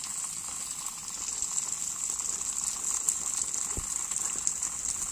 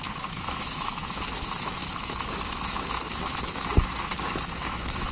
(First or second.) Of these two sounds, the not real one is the second